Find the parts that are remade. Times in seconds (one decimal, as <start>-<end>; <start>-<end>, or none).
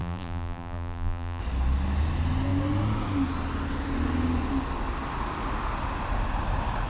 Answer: 0.0-1.4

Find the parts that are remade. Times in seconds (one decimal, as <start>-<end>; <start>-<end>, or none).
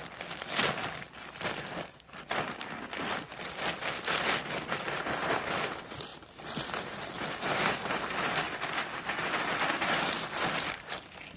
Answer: none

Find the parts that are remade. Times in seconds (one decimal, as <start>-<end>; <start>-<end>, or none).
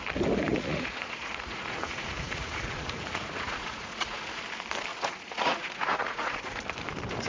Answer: 0.5-4.4; 4.9-6.6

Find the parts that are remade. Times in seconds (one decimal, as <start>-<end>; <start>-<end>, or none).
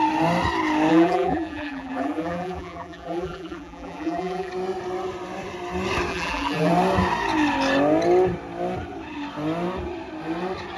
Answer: 0.9-4.5; 6.1-6.7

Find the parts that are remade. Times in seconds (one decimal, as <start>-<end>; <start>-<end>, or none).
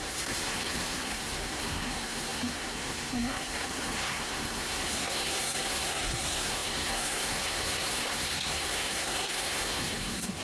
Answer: 0.0-10.4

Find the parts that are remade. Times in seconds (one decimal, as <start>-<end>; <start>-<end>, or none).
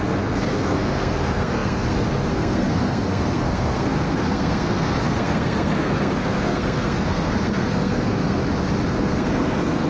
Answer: 0.0-8.4; 8.9-9.9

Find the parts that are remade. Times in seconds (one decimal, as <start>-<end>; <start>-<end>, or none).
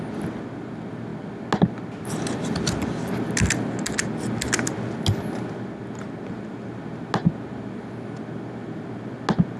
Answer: none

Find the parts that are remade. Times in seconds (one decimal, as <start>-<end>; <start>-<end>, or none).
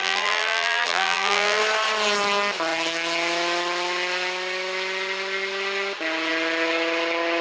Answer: 0.0-1.6